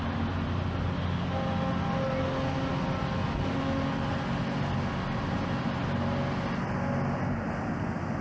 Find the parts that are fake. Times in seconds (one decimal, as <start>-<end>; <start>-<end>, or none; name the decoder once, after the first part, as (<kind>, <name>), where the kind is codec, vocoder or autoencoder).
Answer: none